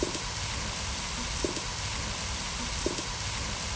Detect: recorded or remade recorded